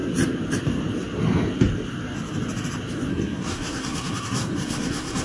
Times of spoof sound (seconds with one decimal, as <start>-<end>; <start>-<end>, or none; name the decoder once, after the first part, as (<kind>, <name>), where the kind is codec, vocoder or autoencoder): 3.1-5.2 (codec, SNAC)